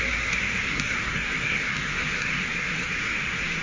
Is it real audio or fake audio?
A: fake